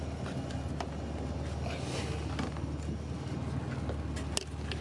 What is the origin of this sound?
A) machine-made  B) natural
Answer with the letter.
B